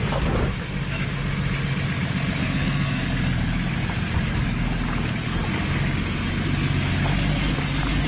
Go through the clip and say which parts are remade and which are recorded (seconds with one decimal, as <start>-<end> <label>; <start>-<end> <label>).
0.0-2.4 recorded; 2.4-3.0 remade; 3.0-8.1 recorded